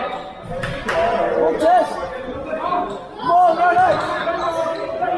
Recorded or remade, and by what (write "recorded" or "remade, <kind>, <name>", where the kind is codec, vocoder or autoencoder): recorded